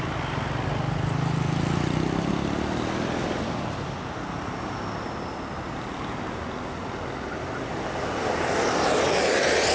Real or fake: real